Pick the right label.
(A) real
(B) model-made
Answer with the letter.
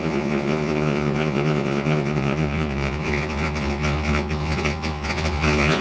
B